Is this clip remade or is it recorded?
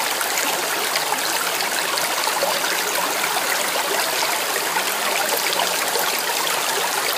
recorded